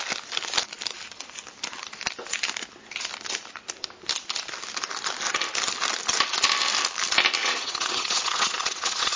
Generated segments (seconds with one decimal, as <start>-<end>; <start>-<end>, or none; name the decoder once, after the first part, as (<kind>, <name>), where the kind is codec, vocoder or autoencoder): 7.4-9.2 (vocoder, WaveNeXt)